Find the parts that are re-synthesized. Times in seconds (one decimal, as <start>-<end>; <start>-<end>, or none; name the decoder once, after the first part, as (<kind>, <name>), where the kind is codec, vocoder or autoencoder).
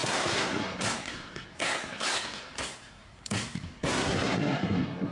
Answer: 0.0-5.1 (codec, SNAC)